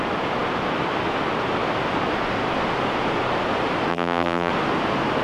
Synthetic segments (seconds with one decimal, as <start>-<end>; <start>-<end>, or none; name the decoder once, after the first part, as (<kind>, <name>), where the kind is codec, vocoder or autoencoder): 3.9-4.5 (vocoder, BigVGAN v2)